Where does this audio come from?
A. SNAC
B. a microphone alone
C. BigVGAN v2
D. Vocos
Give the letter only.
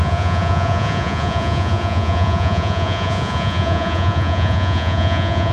D